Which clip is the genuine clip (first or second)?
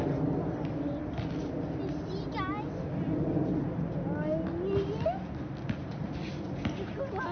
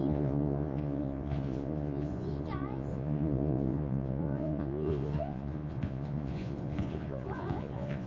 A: first